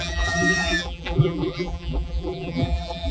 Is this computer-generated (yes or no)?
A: yes